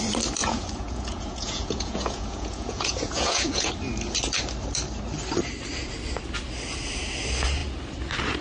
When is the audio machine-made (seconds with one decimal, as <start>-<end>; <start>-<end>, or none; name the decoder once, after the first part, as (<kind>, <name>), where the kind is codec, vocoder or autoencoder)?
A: 0.4-3.7 (vocoder, Vocos)